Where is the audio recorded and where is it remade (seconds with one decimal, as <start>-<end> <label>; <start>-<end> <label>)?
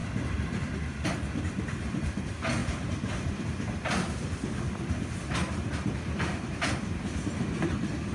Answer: 0.0-2.6 recorded; 2.6-3.4 remade; 3.4-5.4 recorded; 5.4-7.5 remade; 7.5-8.1 recorded